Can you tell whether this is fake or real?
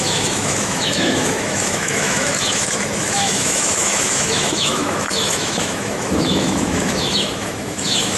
fake